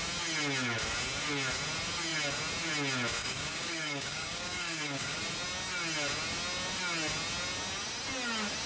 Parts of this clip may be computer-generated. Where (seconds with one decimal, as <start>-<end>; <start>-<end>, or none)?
3.2-5.2